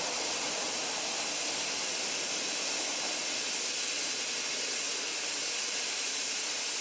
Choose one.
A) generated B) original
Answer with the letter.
B